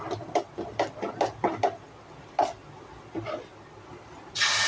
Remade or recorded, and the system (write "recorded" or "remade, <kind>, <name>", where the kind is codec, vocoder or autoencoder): recorded